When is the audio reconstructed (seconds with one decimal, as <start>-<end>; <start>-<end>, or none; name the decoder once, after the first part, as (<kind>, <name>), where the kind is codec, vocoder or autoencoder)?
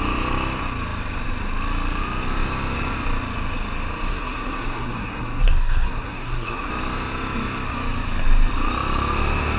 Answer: 4.1-6.7 (codec, SNAC)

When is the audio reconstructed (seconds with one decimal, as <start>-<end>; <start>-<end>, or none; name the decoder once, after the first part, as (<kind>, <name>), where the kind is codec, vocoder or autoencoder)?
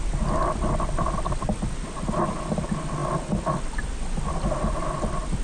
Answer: none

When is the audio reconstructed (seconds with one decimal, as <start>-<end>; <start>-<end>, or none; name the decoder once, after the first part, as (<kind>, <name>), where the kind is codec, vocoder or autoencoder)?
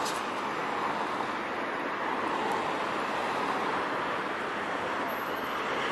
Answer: none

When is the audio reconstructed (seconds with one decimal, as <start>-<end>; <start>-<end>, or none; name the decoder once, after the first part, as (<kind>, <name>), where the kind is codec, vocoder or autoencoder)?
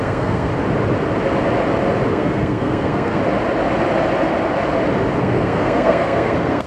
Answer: 0.0-0.5 (codec, SNAC); 2.1-3.2; 5.2-6.7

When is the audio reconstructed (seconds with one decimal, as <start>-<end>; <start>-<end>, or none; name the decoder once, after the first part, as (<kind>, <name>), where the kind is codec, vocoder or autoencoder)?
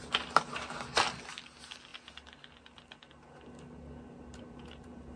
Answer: none